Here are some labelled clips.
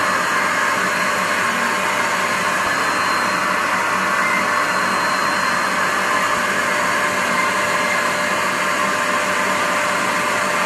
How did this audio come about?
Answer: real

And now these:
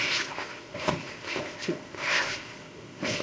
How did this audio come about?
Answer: fake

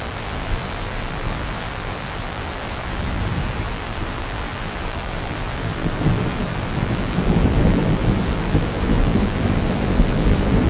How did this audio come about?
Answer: fake